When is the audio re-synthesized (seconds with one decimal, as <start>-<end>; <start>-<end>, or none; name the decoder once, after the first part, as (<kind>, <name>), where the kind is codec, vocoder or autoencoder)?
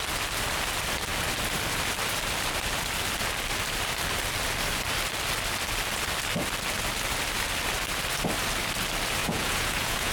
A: 9.2-10.1 (vocoder, Vocos)